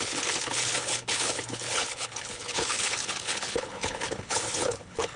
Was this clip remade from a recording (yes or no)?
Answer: yes